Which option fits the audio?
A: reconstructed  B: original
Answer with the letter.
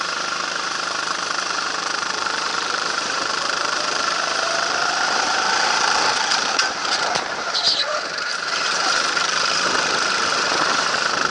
A